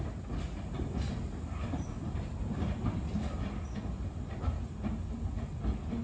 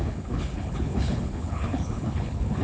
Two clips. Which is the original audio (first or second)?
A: first